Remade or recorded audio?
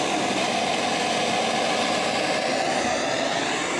recorded